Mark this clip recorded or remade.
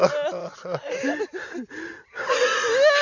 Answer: recorded